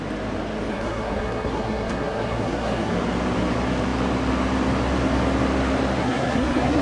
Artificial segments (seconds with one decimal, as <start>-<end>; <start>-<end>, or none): 0.7-2.9; 6.0-6.8